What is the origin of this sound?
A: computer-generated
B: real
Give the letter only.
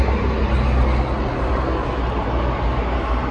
B